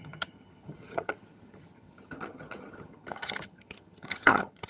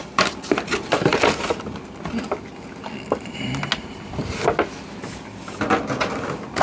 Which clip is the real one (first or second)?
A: second